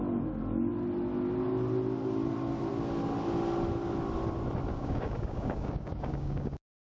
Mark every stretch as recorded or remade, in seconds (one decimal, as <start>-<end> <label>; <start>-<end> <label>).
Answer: 0.0-4.7 recorded; 4.7-6.8 remade